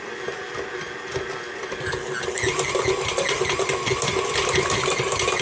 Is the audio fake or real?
real